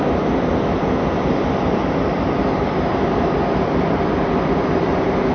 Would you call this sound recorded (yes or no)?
yes